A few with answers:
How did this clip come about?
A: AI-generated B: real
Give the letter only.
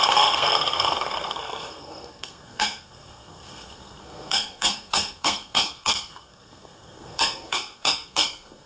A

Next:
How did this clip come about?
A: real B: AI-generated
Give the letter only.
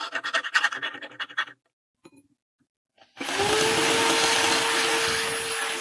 A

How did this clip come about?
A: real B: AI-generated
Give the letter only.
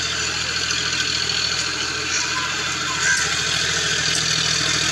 A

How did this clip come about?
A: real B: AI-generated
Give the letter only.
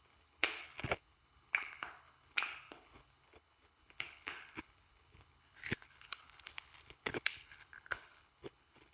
B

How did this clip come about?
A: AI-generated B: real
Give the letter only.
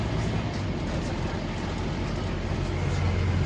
B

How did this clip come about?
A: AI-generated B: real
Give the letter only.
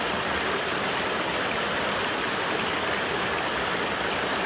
B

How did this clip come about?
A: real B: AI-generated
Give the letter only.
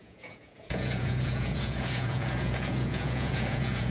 B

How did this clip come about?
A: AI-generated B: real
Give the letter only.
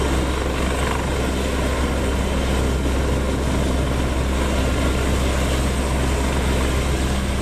B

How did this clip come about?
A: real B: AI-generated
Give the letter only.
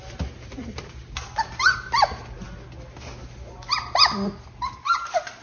A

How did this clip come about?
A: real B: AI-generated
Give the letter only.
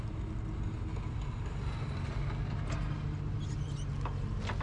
A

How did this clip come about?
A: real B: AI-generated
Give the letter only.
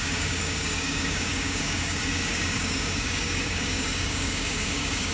B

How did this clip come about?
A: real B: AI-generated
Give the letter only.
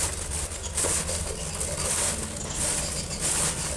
A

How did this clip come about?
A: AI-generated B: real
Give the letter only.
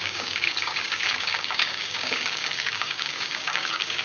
A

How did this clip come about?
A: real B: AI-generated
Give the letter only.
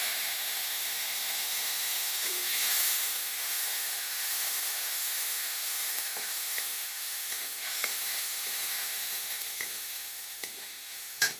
B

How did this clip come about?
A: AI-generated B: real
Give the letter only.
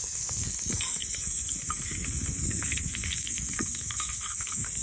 A